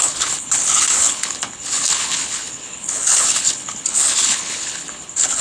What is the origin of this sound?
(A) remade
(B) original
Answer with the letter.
A